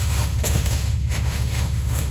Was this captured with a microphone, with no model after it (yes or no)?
no